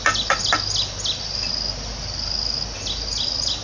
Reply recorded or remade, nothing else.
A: recorded